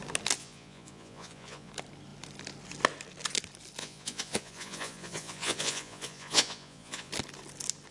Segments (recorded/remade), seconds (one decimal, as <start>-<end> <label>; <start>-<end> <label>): 0.0-0.4 recorded; 0.4-1.7 remade; 1.7-3.8 recorded; 3.8-7.1 remade; 7.1-7.9 recorded